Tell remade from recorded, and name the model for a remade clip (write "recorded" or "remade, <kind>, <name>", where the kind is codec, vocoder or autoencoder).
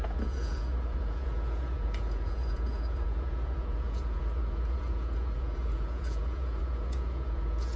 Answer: remade, vocoder, Vocos